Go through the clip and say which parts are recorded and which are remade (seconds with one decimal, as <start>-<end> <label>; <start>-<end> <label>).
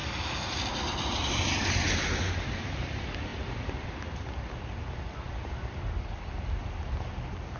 0.0-7.6 recorded